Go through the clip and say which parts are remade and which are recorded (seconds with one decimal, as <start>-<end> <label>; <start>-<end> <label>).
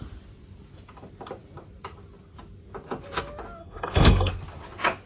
0.0-3.6 recorded; 3.6-4.3 remade; 4.3-5.1 recorded